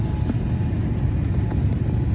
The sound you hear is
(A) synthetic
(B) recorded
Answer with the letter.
B